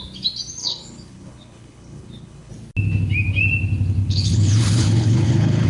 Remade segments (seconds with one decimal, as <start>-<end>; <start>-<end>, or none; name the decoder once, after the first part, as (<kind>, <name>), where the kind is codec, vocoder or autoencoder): 0.6-2.5 (codec, HILCodec); 4.0-5.7